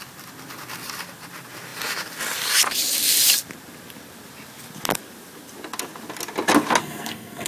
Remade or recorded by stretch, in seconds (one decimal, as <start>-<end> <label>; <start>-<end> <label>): 0.0-6.8 recorded; 6.8-7.5 remade